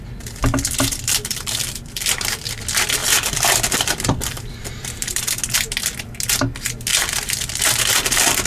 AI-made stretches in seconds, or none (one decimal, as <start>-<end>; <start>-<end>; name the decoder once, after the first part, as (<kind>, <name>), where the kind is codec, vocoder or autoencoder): 0.4-2.2 (vocoder, BigVGAN v2); 3.0-5.2; 6.9-7.6